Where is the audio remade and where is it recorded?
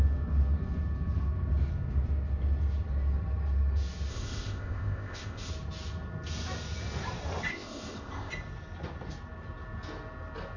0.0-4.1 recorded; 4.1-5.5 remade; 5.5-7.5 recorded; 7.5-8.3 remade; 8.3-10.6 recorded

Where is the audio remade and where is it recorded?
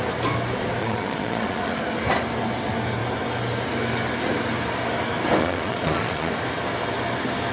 0.0-0.8 recorded; 0.8-1.8 remade; 1.8-5.4 recorded; 5.4-6.3 remade; 6.3-7.5 recorded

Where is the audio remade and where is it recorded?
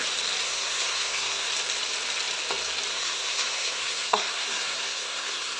0.0-0.4 recorded; 0.4-1.5 remade; 1.5-2.9 recorded; 2.9-5.6 remade